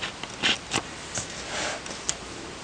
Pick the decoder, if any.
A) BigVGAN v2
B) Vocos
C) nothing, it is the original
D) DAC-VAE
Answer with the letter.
C